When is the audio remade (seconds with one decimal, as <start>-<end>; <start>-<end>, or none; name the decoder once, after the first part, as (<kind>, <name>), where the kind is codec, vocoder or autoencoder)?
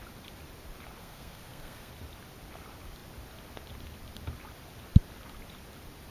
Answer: 1.0-1.9 (codec, SNAC)